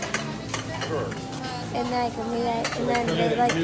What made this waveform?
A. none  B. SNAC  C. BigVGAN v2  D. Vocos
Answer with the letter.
A